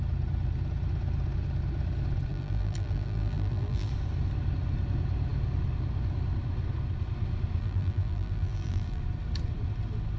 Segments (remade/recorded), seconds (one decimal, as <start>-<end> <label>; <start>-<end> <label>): 0.0-2.3 recorded; 2.3-3.9 remade; 3.9-7.6 recorded; 7.6-9.0 remade; 9.0-10.2 recorded